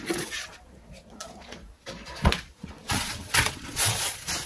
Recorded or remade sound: remade